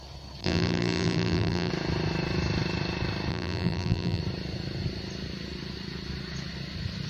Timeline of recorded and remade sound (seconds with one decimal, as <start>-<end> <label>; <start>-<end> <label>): 0.0-0.4 recorded; 0.4-1.7 remade; 1.7-3.3 recorded; 3.3-4.2 remade; 4.2-7.1 recorded